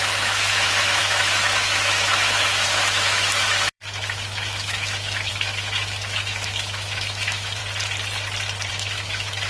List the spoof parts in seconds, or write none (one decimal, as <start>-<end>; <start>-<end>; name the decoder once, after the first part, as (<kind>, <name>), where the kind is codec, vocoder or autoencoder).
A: 0.0-7.6 (autoencoder, DAC-VAE); 8.7-9.5

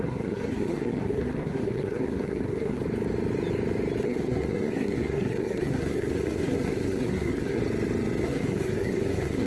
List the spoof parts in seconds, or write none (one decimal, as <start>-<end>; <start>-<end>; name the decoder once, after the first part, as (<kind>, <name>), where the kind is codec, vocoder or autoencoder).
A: 0.0-2.8 (codec, SNAC); 4.0-7.6; 8.2-9.5

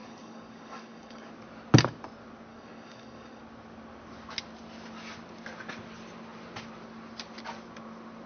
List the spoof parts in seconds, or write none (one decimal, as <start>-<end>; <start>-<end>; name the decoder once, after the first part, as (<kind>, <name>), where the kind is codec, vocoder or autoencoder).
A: 0.0-1.3 (codec, DAC); 2.5-3.4

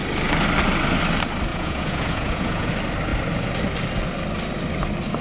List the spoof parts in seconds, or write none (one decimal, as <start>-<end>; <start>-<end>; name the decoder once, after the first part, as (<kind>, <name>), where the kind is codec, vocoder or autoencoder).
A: 1.5-2.7 (vocoder, Vocos)